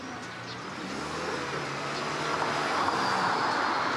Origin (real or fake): real